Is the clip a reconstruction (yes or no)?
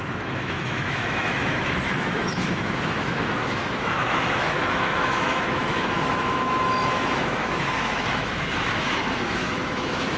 yes